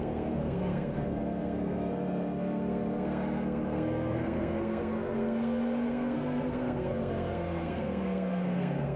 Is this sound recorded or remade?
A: remade